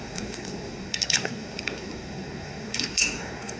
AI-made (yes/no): yes